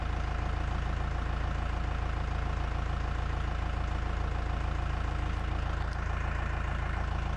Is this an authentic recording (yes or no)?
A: yes